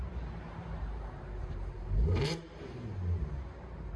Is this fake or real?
fake